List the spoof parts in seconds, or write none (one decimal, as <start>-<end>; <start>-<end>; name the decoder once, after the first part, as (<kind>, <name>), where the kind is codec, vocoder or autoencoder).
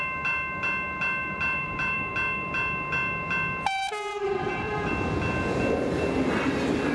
1.2-2.1 (vocoder, BigVGAN v2); 4.1-4.9